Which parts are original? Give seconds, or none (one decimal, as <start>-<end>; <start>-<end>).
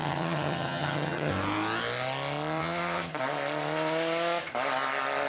1.3-2.6; 3.1-5.3